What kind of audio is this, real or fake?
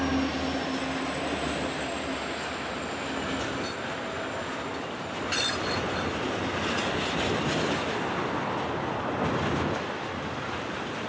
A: real